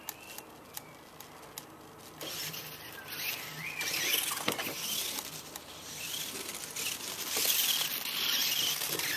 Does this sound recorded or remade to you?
recorded